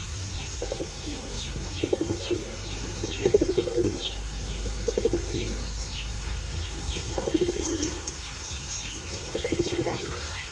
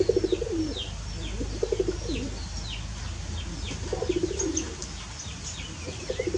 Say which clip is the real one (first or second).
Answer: second